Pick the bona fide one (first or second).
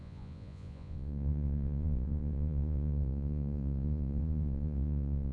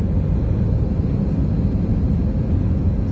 second